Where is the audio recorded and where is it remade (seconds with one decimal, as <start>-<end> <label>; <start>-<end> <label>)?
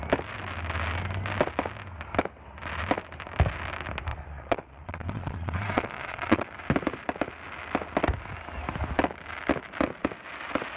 0.0-4.1 recorded; 4.1-6.5 remade; 6.5-10.8 recorded